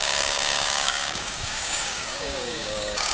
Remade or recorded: remade